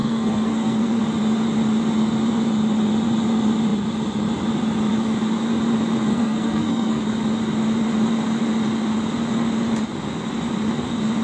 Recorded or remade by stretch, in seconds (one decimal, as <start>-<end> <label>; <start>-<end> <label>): 0.0-1.0 remade; 1.0-6.1 recorded; 6.1-7.0 remade; 7.0-11.2 recorded